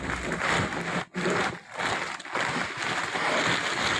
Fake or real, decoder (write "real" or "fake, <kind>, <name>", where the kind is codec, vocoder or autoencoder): real